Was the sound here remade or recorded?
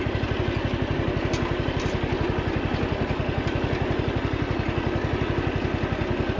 recorded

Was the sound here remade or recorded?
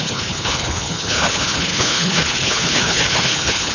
remade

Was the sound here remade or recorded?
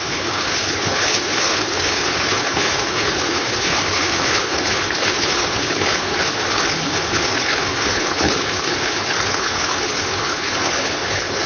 remade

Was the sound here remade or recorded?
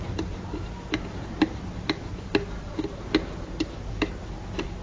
recorded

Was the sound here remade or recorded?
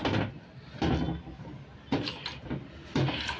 recorded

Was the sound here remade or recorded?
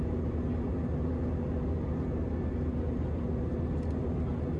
recorded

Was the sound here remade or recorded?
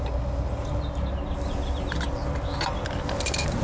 recorded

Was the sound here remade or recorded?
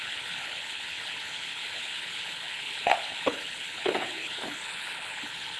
remade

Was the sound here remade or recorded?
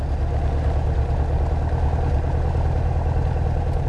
recorded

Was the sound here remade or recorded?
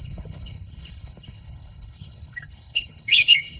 remade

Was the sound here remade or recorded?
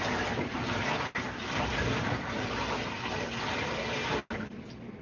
recorded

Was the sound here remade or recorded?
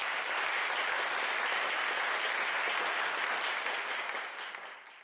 recorded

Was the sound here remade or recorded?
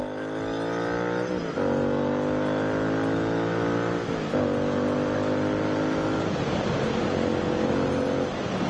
recorded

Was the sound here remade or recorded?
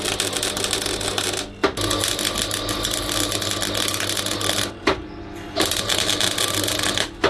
recorded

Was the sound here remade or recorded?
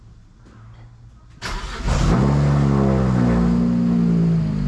recorded